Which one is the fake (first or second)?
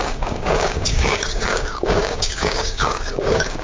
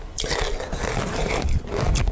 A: first